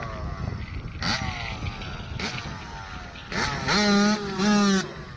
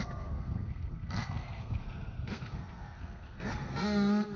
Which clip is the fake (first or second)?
second